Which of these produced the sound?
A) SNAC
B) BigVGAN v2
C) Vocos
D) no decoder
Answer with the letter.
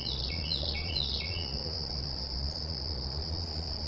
C